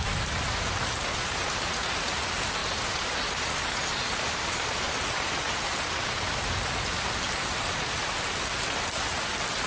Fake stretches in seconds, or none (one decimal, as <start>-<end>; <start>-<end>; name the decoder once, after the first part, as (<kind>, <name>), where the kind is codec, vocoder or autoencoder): none